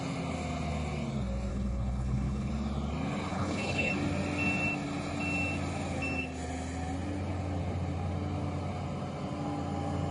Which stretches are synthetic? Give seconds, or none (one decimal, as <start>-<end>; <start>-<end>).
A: 1.5-2.5; 3.3-3.9